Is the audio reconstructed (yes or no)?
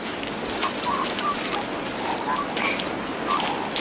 no